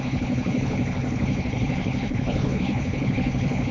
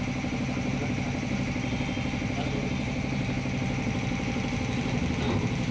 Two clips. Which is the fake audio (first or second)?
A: first